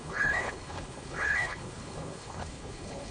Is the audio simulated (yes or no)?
yes